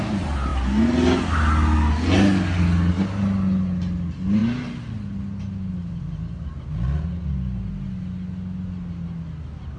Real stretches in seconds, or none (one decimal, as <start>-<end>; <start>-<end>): 0.0-9.8